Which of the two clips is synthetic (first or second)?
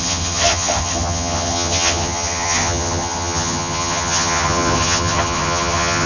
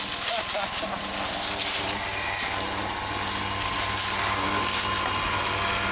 first